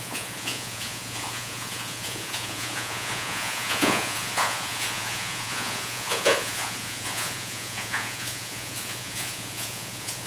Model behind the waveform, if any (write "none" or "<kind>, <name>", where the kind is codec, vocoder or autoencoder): vocoder, Vocos